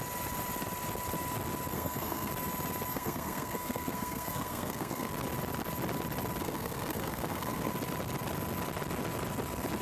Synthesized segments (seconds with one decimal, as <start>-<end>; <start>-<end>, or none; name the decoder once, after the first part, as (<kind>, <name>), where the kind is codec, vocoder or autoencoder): 1.7-2.3 (codec, SNAC); 2.9-5.1; 6.4-7.7